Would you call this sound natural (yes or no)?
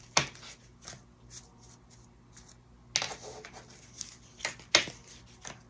yes